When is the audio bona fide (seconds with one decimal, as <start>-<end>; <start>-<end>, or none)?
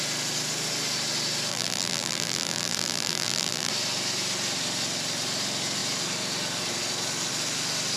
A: 0.0-1.5; 3.7-8.0